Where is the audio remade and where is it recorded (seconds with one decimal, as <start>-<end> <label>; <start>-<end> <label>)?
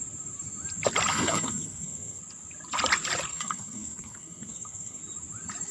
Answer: 0.0-1.1 recorded; 1.1-2.2 remade; 2.2-3.3 recorded; 3.3-5.0 remade; 5.0-5.7 recorded